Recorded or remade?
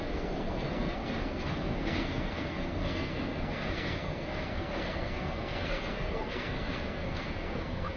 remade